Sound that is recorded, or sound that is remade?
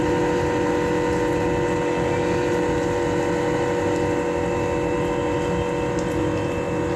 recorded